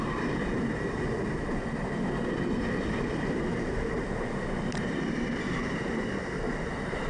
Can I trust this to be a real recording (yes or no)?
no